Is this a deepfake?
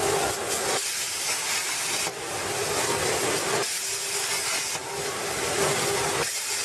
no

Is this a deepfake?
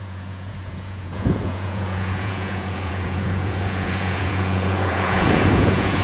yes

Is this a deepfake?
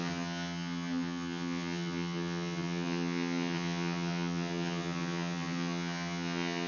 yes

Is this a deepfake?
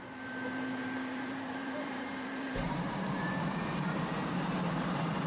yes